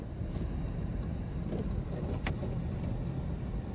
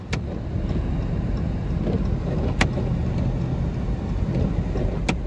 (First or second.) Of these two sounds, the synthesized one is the first